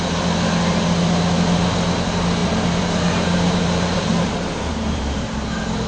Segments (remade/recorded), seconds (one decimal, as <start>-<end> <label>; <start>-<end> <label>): 0.0-2.4 recorded; 2.4-5.5 remade; 5.5-5.9 recorded